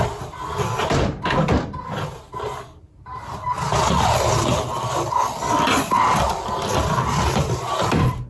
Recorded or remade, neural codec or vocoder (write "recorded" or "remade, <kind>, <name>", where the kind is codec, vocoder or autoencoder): recorded